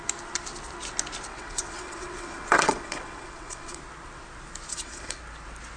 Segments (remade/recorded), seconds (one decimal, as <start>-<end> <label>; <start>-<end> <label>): 0.0-1.3 recorded; 1.3-3.8 remade; 3.8-4.7 recorded; 4.7-5.2 remade; 5.2-5.8 recorded